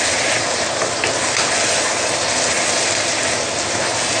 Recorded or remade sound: recorded